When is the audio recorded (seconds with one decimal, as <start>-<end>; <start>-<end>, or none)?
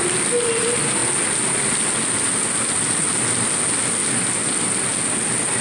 0.0-5.6